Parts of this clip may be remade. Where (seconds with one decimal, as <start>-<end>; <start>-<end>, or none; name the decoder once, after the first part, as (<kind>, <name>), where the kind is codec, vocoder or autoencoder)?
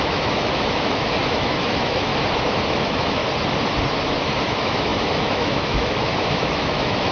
0.0-2.1 (autoencoder, DAC-VAE); 2.7-3.2; 4.4-7.1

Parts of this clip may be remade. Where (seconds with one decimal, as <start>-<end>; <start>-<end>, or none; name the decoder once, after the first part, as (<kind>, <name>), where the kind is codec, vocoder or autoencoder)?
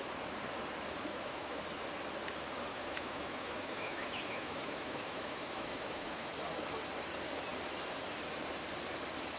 1.1-1.6 (autoencoder, DAC-VAE); 2.7-6.3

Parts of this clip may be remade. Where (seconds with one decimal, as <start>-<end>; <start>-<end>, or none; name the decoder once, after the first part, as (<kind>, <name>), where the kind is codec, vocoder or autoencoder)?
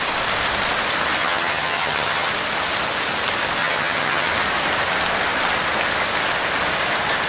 1.2-2.3 (vocoder, HiFi-GAN); 3.6-4.3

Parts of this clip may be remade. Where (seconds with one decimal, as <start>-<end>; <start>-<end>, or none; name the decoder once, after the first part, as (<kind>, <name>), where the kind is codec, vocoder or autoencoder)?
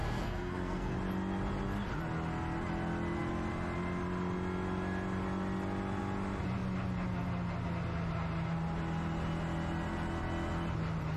0.0-0.9 (codec, SNAC)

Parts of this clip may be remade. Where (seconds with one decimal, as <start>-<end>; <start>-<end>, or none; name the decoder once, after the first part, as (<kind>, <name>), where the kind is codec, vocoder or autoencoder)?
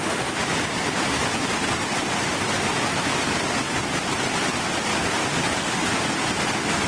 4.9-5.8 (codec, DAC)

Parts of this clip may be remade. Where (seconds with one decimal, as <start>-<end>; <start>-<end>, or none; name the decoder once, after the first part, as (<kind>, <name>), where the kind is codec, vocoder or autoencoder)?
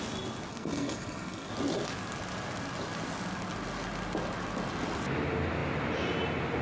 0.5-1.5 (codec, SNAC)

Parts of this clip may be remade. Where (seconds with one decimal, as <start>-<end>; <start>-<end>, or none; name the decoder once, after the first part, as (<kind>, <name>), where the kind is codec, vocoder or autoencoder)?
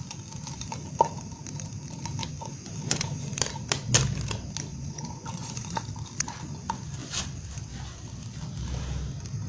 2.2-3.4 (vocoder, Vocos); 4.7-5.8